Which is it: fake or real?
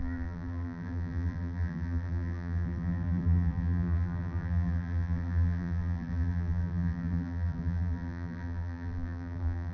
fake